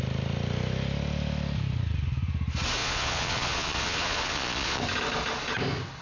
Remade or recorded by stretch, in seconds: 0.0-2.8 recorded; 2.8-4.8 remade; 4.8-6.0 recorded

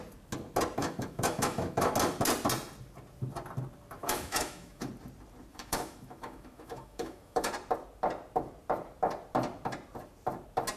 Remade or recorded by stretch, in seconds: 0.0-0.8 recorded; 0.8-1.9 remade; 1.9-4.0 recorded; 4.0-4.9 remade; 4.9-5.5 recorded; 5.5-7.5 remade; 7.5-10.8 recorded